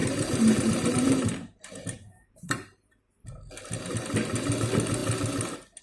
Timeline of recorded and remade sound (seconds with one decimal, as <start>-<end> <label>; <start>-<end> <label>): 0.0-3.5 remade; 3.5-5.8 recorded